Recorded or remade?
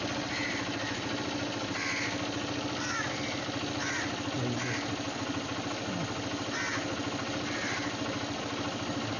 recorded